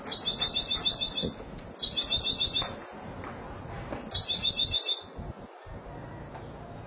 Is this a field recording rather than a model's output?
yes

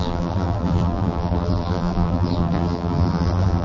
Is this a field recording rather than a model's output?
no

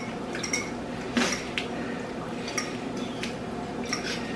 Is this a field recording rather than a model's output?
yes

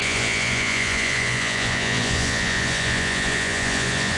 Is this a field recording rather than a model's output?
no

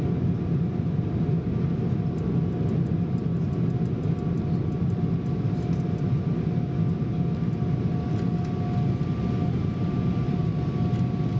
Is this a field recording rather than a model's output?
yes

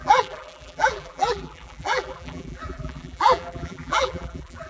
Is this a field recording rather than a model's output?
no